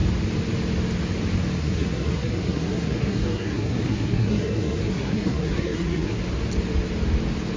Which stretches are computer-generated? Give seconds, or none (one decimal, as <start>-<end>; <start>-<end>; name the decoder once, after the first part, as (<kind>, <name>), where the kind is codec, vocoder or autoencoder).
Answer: 1.6-6.2 (codec, SNAC)